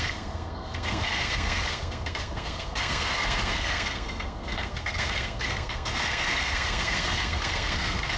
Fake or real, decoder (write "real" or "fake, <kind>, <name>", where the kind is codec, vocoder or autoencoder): fake, codec, SNAC